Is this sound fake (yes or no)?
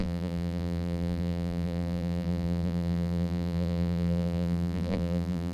yes